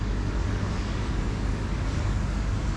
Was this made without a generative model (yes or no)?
no